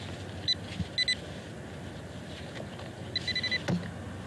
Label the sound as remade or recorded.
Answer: recorded